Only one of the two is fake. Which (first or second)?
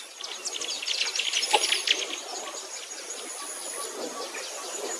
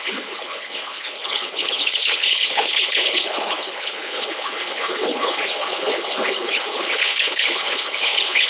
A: second